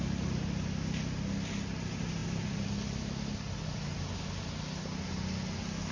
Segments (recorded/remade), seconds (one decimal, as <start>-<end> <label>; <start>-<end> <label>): 0.0-5.9 recorded